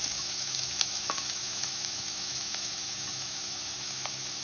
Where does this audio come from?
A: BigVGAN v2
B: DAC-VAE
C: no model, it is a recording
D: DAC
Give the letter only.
B